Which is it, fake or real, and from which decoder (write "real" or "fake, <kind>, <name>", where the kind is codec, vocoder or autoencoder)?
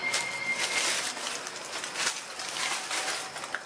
real